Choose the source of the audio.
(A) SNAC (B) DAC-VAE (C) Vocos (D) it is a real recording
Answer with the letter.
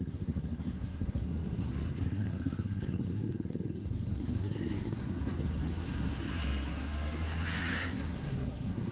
A